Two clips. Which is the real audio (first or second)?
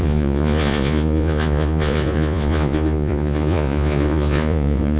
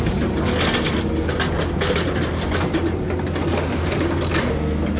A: second